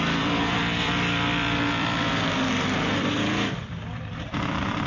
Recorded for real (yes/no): no